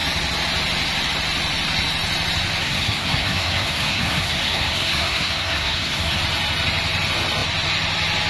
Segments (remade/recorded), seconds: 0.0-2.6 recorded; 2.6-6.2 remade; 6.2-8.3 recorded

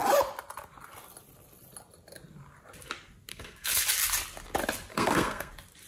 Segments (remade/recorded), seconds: 0.0-3.3 recorded; 3.3-3.8 remade; 3.8-4.9 recorded; 4.9-5.5 remade; 5.5-5.9 recorded

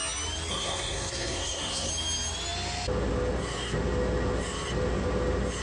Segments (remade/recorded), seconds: 0.0-0.5 recorded; 0.5-1.9 remade; 1.9-5.6 recorded

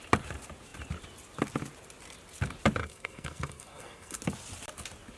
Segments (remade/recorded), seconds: 0.0-2.8 recorded; 2.8-4.2 remade; 4.2-5.2 recorded

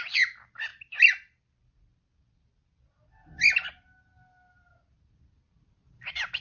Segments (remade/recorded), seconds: 0.0-6.4 recorded

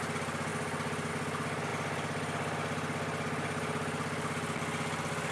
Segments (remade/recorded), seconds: 0.0-5.3 recorded

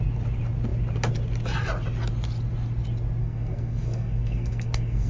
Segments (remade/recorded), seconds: 0.0-3.2 recorded; 3.2-5.1 remade

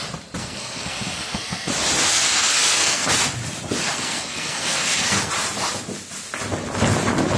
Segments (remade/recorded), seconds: 0.0-0.4 recorded; 0.4-1.7 remade; 1.7-2.1 recorded; 2.1-3.1 remade; 3.1-3.8 recorded; 3.8-5.3 remade; 5.3-7.4 recorded